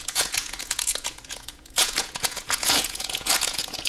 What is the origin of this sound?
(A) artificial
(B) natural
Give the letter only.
A